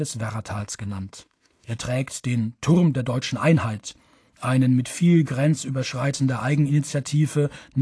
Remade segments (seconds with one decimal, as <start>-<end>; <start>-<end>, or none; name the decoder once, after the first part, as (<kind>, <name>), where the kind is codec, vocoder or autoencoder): 0.6-1.8 (autoencoder, DAC-VAE)

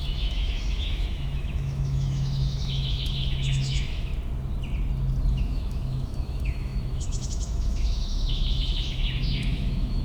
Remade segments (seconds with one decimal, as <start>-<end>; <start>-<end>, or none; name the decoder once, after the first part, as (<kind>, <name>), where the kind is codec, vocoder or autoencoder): 0.0-4.1 (autoencoder, DAC-VAE); 5.3-10.0

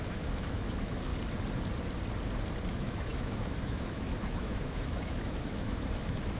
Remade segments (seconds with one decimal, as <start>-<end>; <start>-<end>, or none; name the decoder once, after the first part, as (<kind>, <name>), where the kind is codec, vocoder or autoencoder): 0.0-1.1 (autoencoder, DAC-VAE); 2.7-6.4

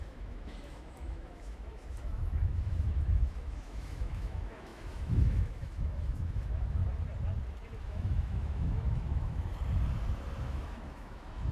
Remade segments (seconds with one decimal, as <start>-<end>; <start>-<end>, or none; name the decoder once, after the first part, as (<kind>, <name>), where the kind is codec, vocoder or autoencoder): 0.0-6.8 (autoencoder, DAC-VAE); 7.8-9.5; 10.4-11.5

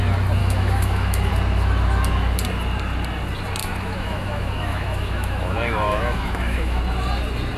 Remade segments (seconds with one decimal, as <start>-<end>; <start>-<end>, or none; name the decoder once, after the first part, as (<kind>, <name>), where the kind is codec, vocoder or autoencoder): 0.4-1.3 (autoencoder, DAC-VAE); 3.6-6.8

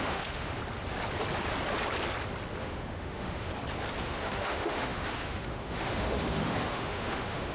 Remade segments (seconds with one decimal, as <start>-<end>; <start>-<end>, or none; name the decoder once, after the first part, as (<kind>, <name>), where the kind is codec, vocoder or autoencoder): 0.0-0.6 (autoencoder, DAC-VAE); 2.6-3.5; 4.0-7.5